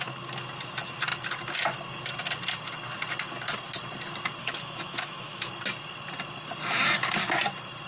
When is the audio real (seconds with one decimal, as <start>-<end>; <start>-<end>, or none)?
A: 0.0-4.4; 5.5-7.9